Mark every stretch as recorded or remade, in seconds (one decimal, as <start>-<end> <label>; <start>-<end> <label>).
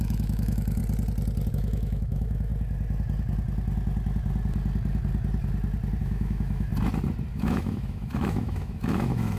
0.0-0.8 remade; 0.8-1.5 recorded; 1.5-2.5 remade; 2.5-6.0 recorded; 6.0-6.7 remade; 6.7-7.3 recorded; 7.3-9.4 remade